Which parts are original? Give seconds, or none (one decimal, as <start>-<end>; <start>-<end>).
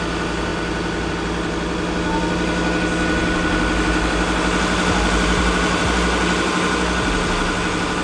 0.0-8.0